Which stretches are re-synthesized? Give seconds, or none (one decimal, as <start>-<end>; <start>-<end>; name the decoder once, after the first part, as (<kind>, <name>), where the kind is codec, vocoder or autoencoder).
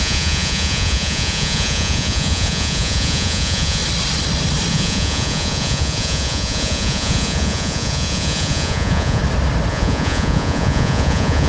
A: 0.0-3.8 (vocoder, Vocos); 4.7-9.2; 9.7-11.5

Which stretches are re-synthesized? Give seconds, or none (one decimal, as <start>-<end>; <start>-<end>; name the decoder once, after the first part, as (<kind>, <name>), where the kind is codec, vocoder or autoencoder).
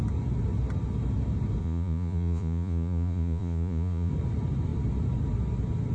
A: 1.6-4.1 (vocoder, Vocos)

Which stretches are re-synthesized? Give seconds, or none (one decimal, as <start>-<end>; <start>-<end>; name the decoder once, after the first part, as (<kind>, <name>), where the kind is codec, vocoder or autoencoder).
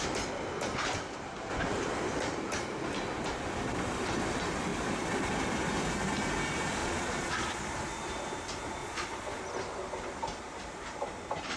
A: 6.8-7.6 (vocoder, Vocos); 8.8-9.4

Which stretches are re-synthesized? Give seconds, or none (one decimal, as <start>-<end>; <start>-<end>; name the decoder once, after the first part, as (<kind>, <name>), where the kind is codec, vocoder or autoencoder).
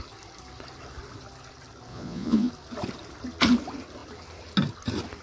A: 1.9-2.5 (vocoder, Vocos)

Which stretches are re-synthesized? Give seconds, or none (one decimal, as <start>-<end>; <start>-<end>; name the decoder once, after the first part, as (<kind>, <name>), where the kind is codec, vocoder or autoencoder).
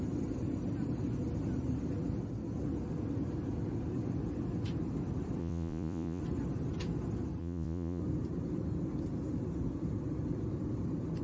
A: 5.4-6.2 (vocoder, Vocos); 7.4-8.0